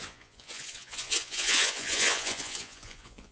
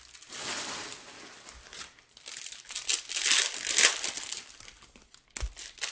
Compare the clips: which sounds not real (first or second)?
first